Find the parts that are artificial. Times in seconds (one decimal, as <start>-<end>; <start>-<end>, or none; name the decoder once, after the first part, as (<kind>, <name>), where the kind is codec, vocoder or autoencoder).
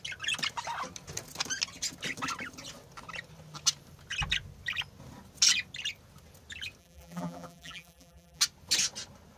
6.8-8.4 (vocoder, BigVGAN v2)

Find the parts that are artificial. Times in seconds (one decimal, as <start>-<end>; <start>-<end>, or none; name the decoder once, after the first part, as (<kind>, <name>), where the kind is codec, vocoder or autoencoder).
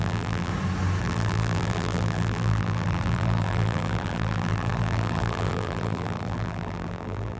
0.0-0.5 (vocoder, BigVGAN v2); 1.0-7.4